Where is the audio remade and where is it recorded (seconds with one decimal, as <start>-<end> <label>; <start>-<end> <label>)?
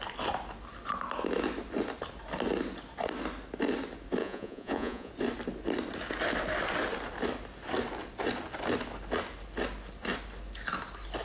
0.0-4.2 recorded; 4.2-5.1 remade; 5.1-11.2 recorded